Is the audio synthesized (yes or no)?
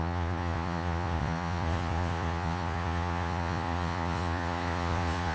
yes